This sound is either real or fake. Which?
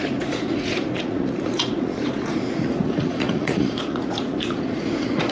fake